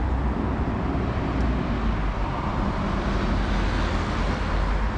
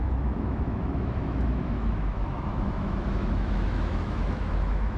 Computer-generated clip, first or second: second